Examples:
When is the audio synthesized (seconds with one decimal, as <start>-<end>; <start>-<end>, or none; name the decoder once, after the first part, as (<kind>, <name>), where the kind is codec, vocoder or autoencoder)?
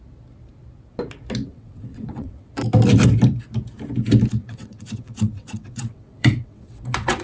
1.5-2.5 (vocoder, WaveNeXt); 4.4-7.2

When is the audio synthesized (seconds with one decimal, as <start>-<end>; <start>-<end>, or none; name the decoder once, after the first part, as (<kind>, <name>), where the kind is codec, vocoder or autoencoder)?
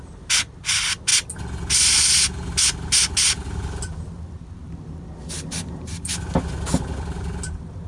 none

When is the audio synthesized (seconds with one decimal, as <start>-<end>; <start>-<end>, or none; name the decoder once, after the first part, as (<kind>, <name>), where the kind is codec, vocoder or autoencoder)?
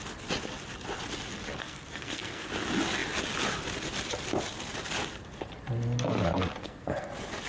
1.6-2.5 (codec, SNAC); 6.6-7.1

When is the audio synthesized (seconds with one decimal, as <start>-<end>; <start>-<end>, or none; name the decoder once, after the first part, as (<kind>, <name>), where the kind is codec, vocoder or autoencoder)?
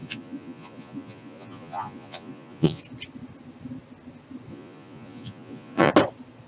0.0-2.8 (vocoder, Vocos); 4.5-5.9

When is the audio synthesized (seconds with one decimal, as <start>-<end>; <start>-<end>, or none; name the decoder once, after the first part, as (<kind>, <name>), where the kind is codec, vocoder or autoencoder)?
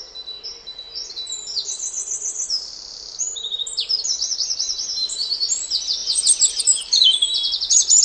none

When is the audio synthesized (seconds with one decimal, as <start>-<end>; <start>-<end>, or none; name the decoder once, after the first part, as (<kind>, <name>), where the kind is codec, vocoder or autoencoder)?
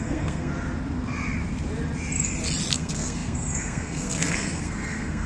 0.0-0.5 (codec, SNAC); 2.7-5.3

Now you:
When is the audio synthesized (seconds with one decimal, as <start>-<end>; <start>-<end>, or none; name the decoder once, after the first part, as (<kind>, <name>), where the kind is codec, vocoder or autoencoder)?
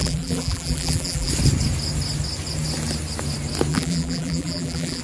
0.0-1.3 (vocoder, BigVGAN v2); 3.7-5.0